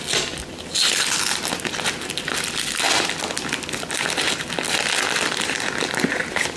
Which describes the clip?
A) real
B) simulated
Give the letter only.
A